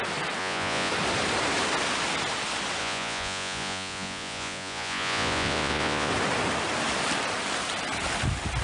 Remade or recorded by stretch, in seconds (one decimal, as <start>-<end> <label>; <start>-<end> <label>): 0.0-0.4 recorded; 0.4-0.9 remade; 0.9-2.8 recorded; 2.8-6.1 remade; 6.1-8.6 recorded